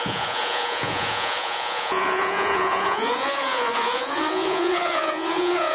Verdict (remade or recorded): remade